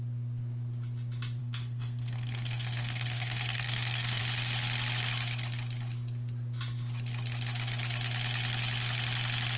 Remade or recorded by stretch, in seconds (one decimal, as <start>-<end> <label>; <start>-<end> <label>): 0.0-1.4 recorded; 1.4-4.2 remade; 4.2-9.6 recorded

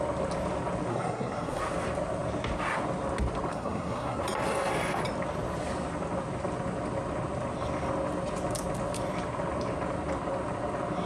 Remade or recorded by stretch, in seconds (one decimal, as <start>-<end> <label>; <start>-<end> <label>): 0.0-0.9 recorded; 0.9-1.6 remade; 1.6-3.5 recorded; 3.5-4.2 remade; 4.2-11.1 recorded

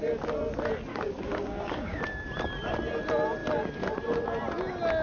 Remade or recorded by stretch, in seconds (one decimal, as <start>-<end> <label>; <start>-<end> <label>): 0.0-0.9 recorded; 0.9-2.0 remade; 2.0-5.0 recorded

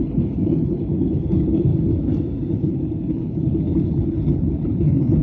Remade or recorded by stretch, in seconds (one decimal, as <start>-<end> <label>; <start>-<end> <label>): 0.0-1.7 remade; 1.7-2.5 recorded; 2.5-5.2 remade

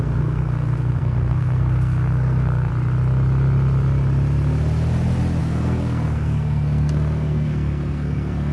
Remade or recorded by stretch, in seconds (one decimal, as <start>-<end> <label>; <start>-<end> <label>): 0.0-2.7 remade; 2.7-5.4 recorded; 5.4-8.5 remade

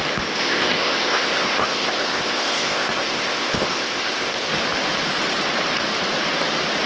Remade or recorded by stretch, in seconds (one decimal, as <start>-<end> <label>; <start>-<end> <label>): 0.0-0.4 recorded; 0.4-4.5 remade; 4.5-6.9 recorded

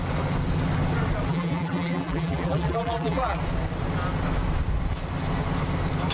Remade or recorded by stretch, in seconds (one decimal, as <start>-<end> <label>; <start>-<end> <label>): 0.0-1.3 recorded; 1.3-3.4 remade; 3.4-6.1 recorded